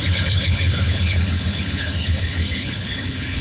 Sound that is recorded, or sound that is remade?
remade